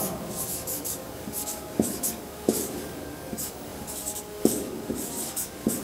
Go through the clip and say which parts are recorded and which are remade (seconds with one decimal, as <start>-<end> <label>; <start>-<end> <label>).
0.0-5.8 remade